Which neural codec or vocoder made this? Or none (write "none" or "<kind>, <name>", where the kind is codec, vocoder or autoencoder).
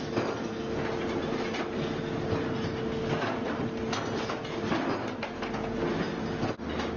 none